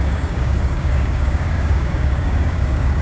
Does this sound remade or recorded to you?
remade